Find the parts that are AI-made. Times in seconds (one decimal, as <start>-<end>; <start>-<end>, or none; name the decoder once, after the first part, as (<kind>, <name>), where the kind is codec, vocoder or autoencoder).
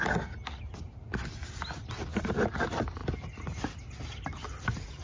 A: none